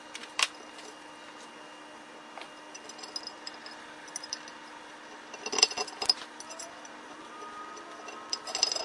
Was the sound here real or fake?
real